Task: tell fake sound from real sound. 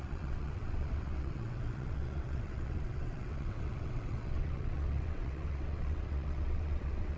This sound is fake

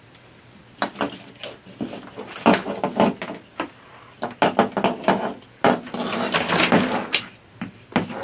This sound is real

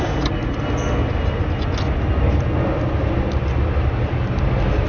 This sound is real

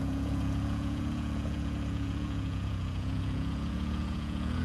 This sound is fake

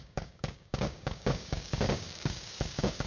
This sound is fake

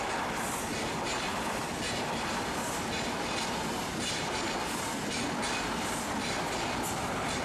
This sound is real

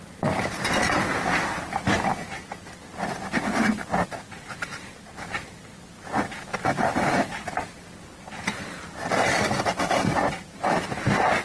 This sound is real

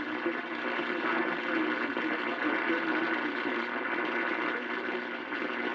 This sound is real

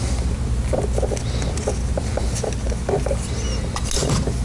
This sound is real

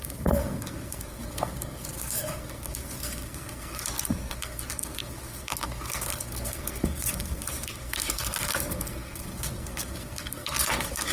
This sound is fake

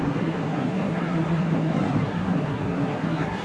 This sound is fake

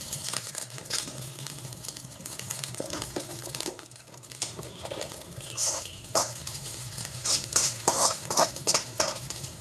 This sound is fake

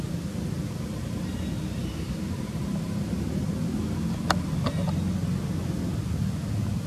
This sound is real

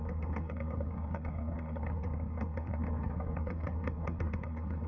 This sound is fake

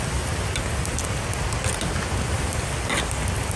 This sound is real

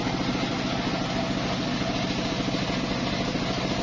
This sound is real